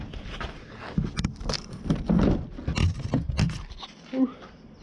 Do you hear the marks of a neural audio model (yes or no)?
no